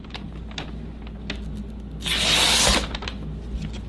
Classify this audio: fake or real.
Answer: real